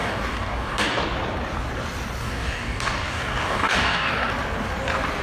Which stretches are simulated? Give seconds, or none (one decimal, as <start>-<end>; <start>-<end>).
0.0-1.0; 2.2-4.3